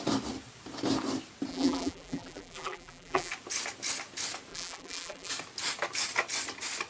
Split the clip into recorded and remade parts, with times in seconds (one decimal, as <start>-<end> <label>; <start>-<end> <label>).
0.0-1.5 recorded; 1.5-3.3 remade; 3.3-4.5 recorded; 4.5-5.3 remade; 5.3-6.9 recorded